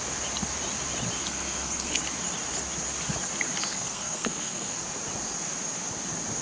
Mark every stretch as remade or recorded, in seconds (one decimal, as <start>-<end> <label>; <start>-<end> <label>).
0.0-1.2 recorded; 1.2-2.0 remade; 2.0-3.7 recorded; 3.7-4.8 remade; 4.8-6.4 recorded